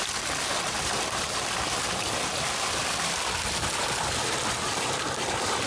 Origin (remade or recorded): remade